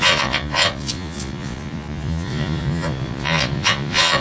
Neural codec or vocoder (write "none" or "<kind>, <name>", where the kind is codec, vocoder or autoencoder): vocoder, Vocos